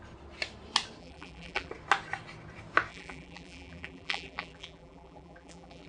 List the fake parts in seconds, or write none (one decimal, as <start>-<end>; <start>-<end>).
1.0-1.7; 2.9-5.9